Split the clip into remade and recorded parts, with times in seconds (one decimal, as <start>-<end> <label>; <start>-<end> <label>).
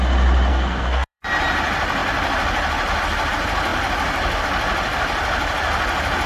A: 0.0-0.5 recorded; 0.5-1.2 remade; 1.2-6.3 recorded